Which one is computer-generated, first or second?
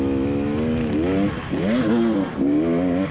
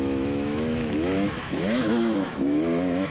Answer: second